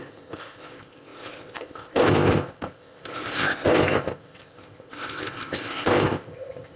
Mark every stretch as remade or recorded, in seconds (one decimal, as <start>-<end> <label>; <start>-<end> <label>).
0.0-6.8 remade